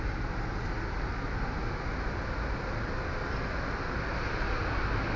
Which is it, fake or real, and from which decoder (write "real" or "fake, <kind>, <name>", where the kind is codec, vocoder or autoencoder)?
real